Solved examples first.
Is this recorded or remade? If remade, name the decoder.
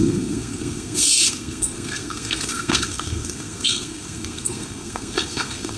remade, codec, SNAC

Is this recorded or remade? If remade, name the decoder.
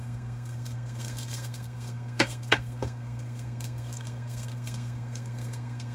remade, codec, SNAC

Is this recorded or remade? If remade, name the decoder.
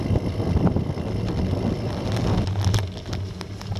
recorded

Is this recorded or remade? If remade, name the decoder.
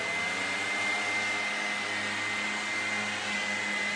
recorded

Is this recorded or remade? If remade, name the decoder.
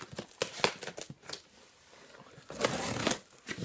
recorded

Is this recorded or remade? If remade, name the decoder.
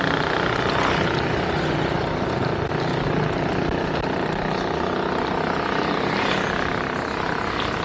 recorded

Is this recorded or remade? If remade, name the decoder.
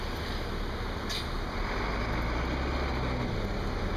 recorded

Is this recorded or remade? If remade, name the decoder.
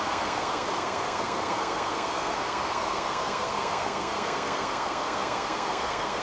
remade, codec, SNAC